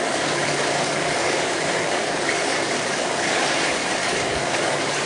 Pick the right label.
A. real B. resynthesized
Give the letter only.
B